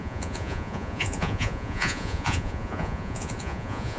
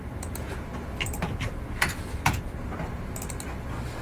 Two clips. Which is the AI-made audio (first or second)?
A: first